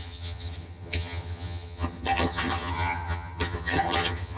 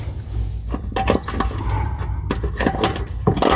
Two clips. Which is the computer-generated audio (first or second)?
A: first